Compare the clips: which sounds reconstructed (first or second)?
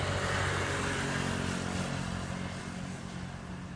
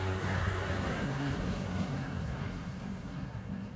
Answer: second